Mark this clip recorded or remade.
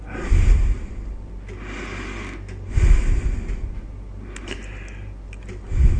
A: recorded